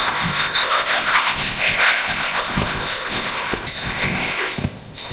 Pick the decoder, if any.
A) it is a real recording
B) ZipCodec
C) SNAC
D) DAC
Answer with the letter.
B